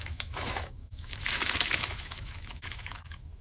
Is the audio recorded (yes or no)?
no